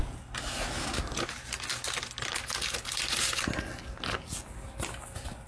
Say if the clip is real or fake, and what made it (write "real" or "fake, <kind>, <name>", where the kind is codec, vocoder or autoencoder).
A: real